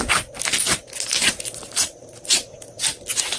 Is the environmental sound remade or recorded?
recorded